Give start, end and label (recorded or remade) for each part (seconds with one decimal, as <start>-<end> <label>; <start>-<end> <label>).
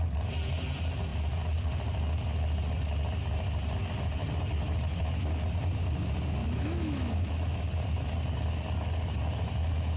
0.0-6.4 recorded; 6.4-7.7 remade; 7.7-10.0 recorded